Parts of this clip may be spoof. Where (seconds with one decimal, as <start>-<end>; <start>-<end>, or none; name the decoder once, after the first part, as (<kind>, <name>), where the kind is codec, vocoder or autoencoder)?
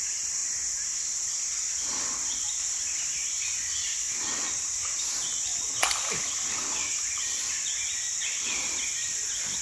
0.0-0.4 (vocoder, BigVGAN v2); 1.8-5.5; 8.4-9.6